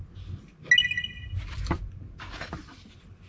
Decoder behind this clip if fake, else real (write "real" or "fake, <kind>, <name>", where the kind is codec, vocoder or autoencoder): real